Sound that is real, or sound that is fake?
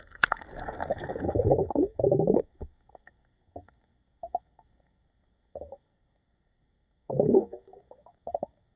fake